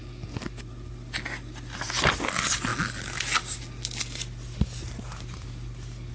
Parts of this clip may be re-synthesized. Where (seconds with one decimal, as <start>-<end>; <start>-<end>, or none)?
none